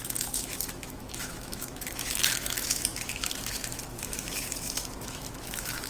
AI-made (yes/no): yes